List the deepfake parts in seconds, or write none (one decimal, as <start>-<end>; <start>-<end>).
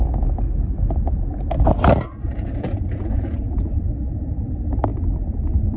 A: 2.2-3.8